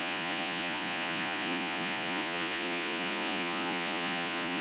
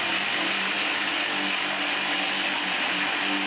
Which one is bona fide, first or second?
second